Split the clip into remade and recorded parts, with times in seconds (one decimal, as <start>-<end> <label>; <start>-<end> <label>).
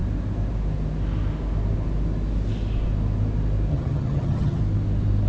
0.0-3.7 recorded; 3.7-4.6 remade; 4.6-5.3 recorded